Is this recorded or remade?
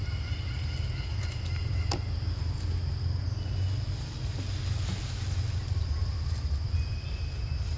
recorded